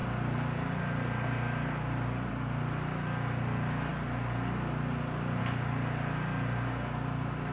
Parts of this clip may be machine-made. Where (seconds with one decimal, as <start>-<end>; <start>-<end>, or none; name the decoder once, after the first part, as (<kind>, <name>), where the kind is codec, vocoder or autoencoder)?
none